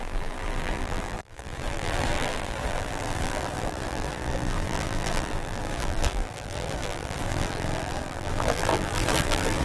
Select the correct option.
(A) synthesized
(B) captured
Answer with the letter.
A